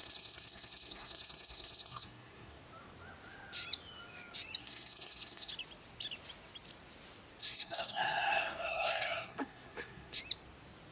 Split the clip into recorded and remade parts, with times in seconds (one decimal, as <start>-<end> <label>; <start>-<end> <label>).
0.0-2.6 remade; 2.6-4.6 recorded; 4.6-5.5 remade; 5.5-7.4 recorded; 7.4-10.2 remade; 10.2-10.9 recorded